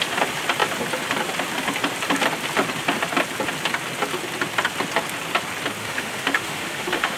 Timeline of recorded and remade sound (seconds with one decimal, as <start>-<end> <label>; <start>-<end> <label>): 0.0-5.8 recorded; 5.8-7.2 remade